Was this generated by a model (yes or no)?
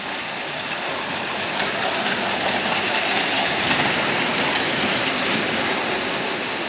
no